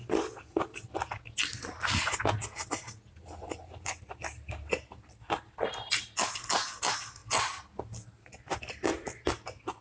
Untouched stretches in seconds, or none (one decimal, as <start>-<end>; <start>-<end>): 0.0-9.8